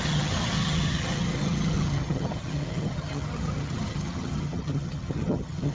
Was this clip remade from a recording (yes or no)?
yes